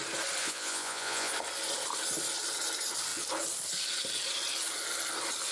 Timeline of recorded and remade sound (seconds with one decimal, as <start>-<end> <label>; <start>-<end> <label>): 0.0-0.4 recorded; 0.4-1.3 remade; 1.3-5.5 recorded